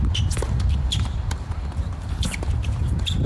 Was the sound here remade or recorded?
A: remade